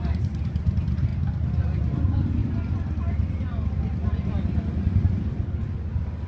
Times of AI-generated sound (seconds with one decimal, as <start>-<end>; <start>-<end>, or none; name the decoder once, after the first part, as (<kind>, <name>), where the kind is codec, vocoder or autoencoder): none